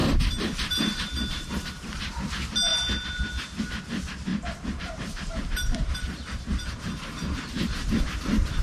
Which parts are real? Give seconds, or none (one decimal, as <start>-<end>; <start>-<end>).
2.3-4.3; 8.0-8.6